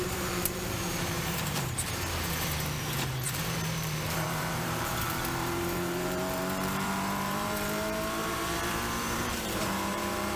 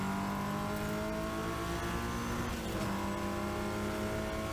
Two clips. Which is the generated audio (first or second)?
first